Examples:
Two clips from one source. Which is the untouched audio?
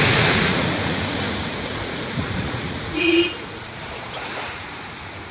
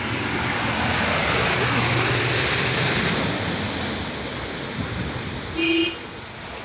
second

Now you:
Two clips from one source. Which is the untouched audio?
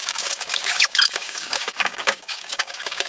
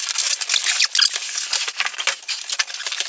second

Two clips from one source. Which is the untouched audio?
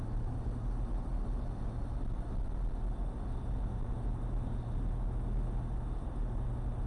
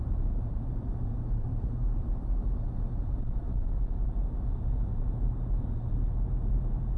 first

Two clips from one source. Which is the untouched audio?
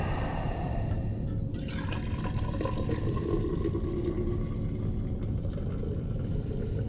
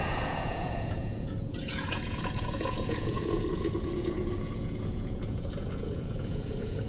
first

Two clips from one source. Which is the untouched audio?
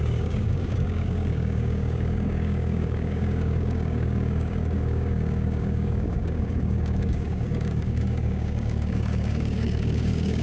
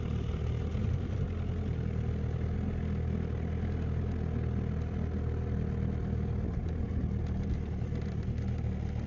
second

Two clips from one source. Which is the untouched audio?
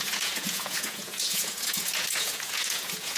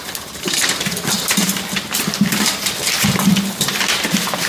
second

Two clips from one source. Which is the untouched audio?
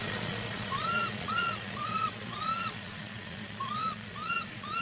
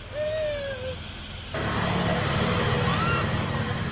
second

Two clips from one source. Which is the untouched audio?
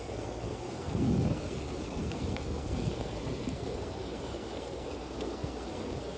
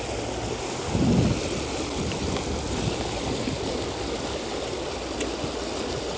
second